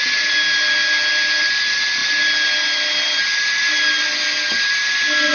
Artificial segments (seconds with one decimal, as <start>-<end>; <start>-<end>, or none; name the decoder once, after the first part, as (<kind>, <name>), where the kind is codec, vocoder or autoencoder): none